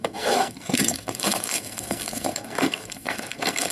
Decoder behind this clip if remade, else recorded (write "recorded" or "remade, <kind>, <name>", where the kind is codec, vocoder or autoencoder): remade, codec, SNAC